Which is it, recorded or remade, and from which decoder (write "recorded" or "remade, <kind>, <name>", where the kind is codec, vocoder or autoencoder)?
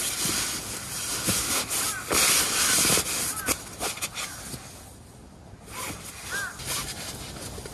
recorded